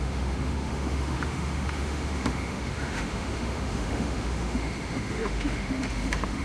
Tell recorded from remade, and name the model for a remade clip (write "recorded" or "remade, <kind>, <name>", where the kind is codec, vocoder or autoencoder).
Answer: remade, autoencoder, DAC-VAE